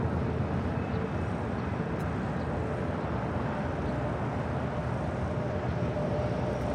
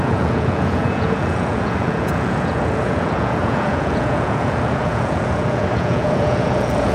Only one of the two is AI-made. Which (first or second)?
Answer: second